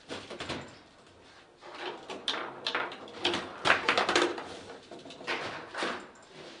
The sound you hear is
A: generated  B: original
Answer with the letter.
B